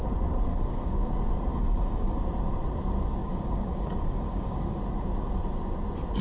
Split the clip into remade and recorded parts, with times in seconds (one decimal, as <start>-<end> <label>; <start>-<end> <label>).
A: 0.0-0.5 recorded; 0.5-1.1 remade; 1.1-1.5 recorded; 1.5-2.2 remade; 2.2-3.2 recorded; 3.2-4.8 remade; 4.8-6.2 recorded